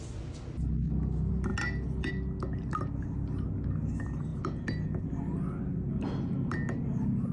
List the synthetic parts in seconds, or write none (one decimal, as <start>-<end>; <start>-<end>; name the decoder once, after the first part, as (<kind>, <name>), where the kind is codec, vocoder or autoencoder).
none